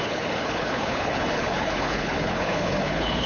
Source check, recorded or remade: remade